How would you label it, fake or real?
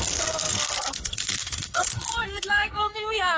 fake